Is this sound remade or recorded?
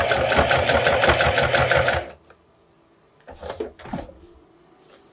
recorded